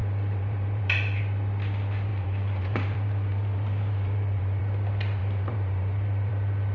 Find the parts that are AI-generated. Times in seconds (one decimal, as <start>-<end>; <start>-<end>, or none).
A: 0.0-1.2; 2.1-4.6; 5.2-6.3